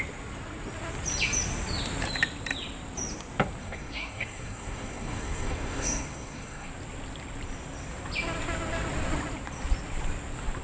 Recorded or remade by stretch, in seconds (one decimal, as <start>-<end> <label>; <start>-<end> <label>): 0.0-3.6 recorded; 3.6-6.7 remade; 6.7-10.6 recorded